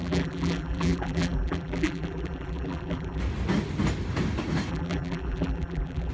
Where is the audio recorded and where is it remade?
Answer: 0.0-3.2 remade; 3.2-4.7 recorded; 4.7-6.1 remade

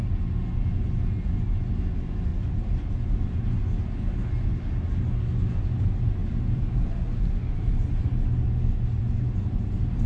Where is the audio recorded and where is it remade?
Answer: 0.0-2.3 recorded; 2.3-2.9 remade; 2.9-6.2 recorded; 6.2-7.2 remade; 7.2-10.1 recorded

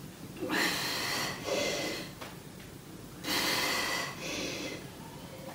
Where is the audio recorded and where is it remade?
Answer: 0.0-1.6 remade; 1.6-4.3 recorded; 4.3-5.5 remade

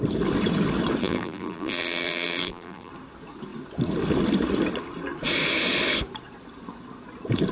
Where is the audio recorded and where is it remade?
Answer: 0.0-1.0 recorded; 1.0-2.9 remade; 2.9-7.5 recorded

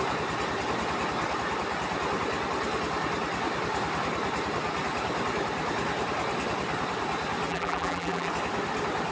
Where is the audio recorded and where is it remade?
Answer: 0.0-7.5 recorded; 7.5-8.3 remade; 8.3-9.1 recorded

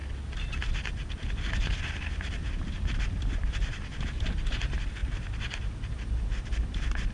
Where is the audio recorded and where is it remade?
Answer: 0.0-2.5 recorded; 2.5-7.1 remade